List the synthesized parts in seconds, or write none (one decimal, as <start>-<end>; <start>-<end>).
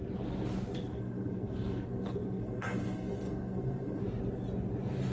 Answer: 0.9-4.0